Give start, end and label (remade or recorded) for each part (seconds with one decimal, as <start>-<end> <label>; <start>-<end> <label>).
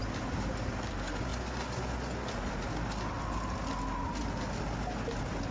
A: 0.0-5.5 recorded